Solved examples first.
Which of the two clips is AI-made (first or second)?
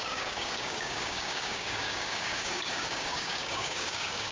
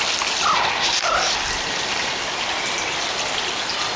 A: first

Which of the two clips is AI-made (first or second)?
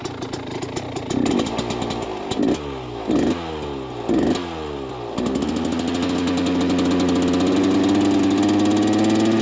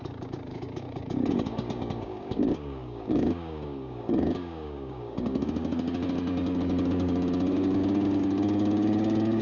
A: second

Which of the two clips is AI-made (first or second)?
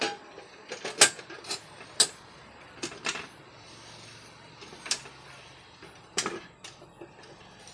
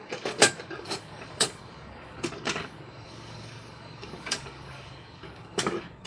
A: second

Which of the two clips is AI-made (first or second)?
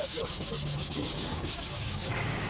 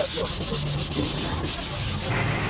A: first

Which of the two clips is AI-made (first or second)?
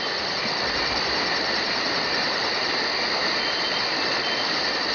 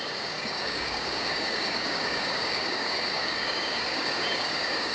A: second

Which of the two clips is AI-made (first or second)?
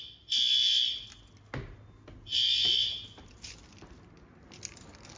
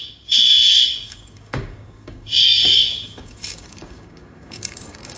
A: second